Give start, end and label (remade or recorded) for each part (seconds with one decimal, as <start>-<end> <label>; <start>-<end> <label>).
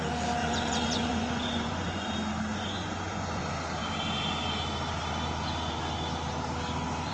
0.0-0.4 recorded; 0.4-2.1 remade; 2.1-2.5 recorded; 2.5-3.4 remade; 3.4-7.1 recorded